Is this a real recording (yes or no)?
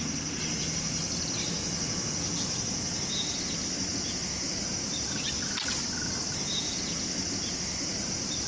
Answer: yes